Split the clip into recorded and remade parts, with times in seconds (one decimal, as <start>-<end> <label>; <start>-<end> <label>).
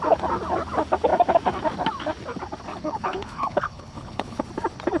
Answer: 0.0-2.7 recorded; 2.7-4.4 remade; 4.4-5.0 recorded